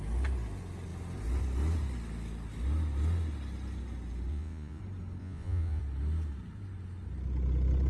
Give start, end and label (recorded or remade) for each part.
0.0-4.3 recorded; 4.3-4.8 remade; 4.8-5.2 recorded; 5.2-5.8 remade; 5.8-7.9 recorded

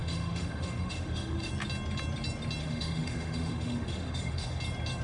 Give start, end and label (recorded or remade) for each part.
0.0-1.5 remade; 1.5-2.6 recorded; 2.6-4.6 remade; 4.6-5.0 recorded

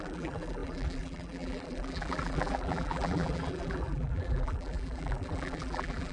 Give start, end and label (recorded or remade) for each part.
0.0-6.1 remade

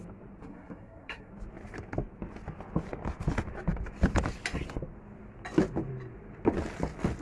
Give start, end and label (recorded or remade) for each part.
0.0-0.4 recorded; 0.4-1.3 remade; 1.3-7.2 recorded

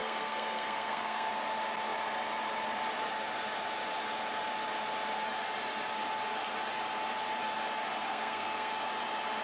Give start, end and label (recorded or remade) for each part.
0.0-1.3 remade; 1.3-8.0 recorded; 8.0-8.7 remade; 8.7-9.4 recorded

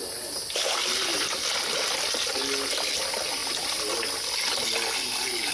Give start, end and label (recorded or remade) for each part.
0.0-1.1 remade; 1.1-1.8 recorded; 1.8-3.4 remade; 3.4-4.6 recorded; 4.6-5.5 remade

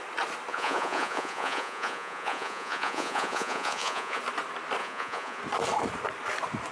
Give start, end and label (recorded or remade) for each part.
0.0-0.5 recorded; 0.5-4.2 remade; 4.2-4.8 recorded; 4.8-5.4 remade; 5.4-6.7 recorded